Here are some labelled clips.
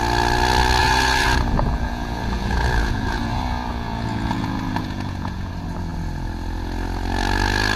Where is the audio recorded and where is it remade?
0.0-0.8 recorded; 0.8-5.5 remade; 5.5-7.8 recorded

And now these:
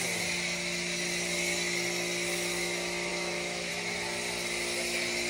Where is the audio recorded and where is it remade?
0.0-3.1 recorded; 3.1-3.7 remade; 3.7-5.3 recorded

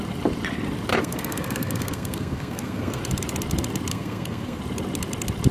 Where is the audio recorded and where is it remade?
0.0-0.9 recorded; 0.9-3.0 remade; 3.0-3.9 recorded; 3.9-4.6 remade; 4.6-5.5 recorded

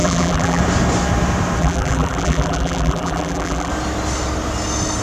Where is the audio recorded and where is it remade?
0.0-0.6 remade; 0.6-1.6 recorded; 1.6-3.7 remade; 3.7-5.0 recorded

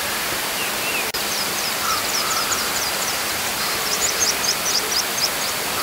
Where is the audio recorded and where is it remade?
0.0-1.1 recorded; 1.1-4.6 remade; 4.6-5.8 recorded

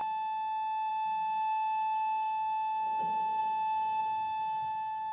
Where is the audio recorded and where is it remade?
0.0-0.9 recorded; 0.9-5.1 remade